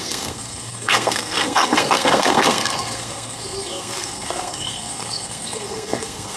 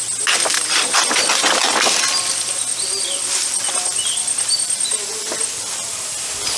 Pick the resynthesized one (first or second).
first